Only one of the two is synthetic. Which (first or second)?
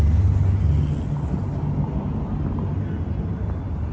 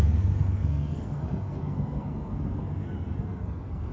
second